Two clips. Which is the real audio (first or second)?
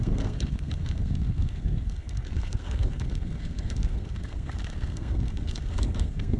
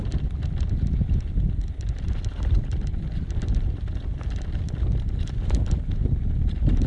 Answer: second